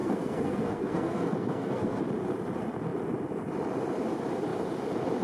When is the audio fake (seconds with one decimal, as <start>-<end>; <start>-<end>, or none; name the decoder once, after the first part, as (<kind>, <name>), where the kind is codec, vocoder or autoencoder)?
0.0-2.0 (codec, SNAC)